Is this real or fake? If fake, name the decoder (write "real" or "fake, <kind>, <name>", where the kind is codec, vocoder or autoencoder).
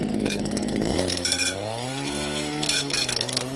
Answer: fake, codec, SNAC